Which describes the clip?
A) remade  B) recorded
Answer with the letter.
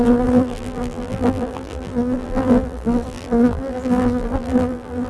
A